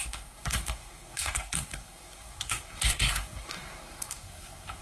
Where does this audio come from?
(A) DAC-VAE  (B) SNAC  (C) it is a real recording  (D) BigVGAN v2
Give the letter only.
B